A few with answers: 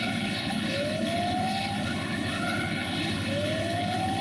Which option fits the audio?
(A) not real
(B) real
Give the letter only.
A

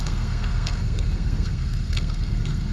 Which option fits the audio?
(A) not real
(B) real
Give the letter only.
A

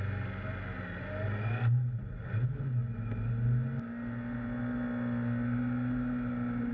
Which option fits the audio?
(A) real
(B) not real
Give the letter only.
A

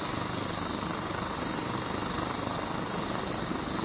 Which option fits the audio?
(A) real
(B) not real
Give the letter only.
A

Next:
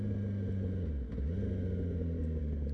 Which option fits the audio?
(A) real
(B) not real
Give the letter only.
A